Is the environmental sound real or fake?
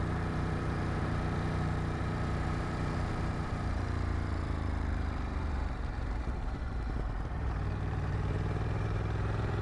fake